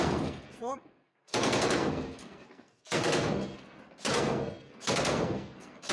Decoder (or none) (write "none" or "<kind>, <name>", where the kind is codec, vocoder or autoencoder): codec, SNAC